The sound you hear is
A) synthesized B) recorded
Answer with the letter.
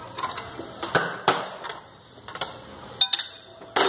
B